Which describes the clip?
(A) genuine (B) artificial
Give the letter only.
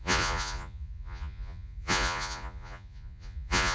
B